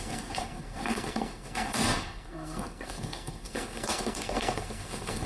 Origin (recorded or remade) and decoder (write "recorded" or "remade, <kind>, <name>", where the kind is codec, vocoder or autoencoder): remade, codec, SNAC